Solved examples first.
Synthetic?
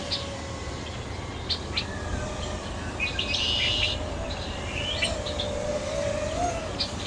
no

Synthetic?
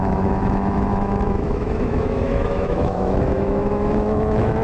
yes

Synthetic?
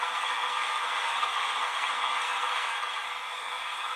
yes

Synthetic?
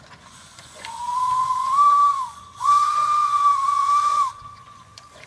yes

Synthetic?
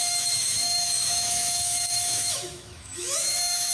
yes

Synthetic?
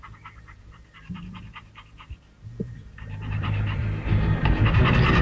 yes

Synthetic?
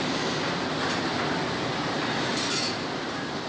no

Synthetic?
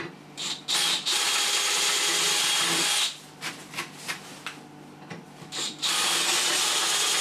no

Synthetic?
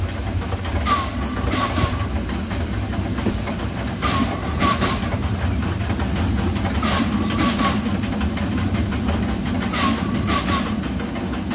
no